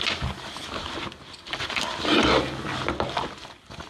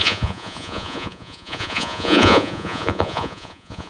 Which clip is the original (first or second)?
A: first